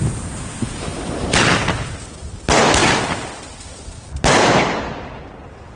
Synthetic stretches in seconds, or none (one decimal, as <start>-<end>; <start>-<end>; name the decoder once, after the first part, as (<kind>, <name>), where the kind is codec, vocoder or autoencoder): none